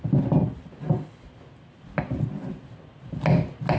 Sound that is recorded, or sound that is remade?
recorded